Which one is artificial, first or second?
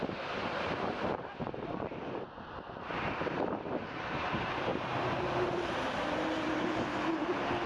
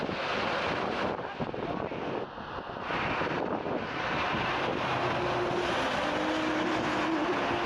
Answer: first